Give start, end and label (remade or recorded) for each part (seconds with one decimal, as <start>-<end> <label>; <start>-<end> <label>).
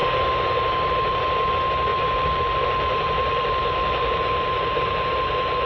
0.0-1.5 remade; 1.5-1.9 recorded; 1.9-5.3 remade; 5.3-5.7 recorded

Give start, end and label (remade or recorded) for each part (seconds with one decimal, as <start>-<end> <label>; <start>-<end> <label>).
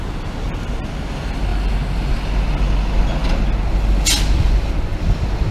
0.0-5.5 recorded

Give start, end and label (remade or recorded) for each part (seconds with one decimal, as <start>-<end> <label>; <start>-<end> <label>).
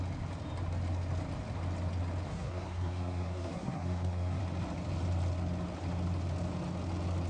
0.0-2.3 recorded; 2.3-4.4 remade; 4.4-7.3 recorded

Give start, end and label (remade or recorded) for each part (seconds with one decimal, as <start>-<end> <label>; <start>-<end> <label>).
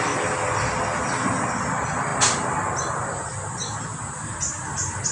0.0-5.1 recorded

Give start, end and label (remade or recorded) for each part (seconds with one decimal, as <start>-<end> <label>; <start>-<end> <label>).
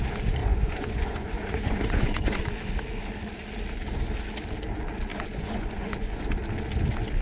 0.0-0.4 recorded; 0.4-2.4 remade; 2.4-5.1 recorded; 5.1-6.2 remade; 6.2-7.2 recorded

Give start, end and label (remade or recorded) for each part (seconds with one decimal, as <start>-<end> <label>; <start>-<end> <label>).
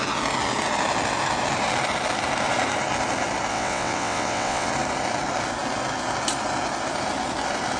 0.0-3.5 recorded; 3.5-4.7 remade; 4.7-7.8 recorded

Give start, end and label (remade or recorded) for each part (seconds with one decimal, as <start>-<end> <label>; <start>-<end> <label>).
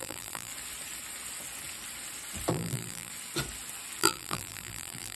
0.0-0.5 remade; 0.5-2.5 recorded; 2.5-3.1 remade; 3.1-4.0 recorded; 4.0-5.2 remade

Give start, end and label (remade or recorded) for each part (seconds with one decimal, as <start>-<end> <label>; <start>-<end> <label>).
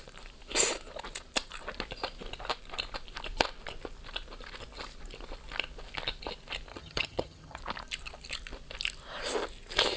0.0-6.7 recorded; 6.7-7.6 remade; 7.6-10.0 recorded